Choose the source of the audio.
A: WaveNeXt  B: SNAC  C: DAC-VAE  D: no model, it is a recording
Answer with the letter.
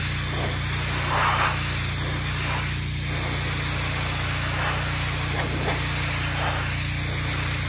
D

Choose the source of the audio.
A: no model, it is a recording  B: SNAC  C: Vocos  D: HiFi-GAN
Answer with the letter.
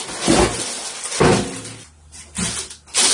A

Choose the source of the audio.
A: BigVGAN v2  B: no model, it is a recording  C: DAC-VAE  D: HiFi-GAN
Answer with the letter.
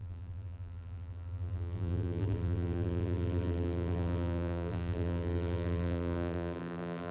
A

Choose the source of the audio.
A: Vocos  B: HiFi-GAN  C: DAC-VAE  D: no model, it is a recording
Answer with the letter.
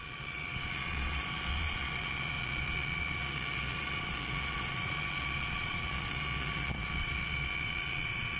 A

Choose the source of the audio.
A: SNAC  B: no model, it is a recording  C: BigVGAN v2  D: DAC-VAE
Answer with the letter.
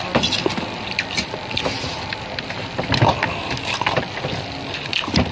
C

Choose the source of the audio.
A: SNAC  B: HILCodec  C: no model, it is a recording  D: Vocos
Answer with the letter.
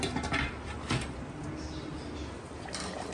C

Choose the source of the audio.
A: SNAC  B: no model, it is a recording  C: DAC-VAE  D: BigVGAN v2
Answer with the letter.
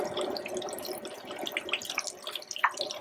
B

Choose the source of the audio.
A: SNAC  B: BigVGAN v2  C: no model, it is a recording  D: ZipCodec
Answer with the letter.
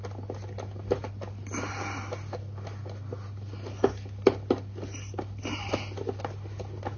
C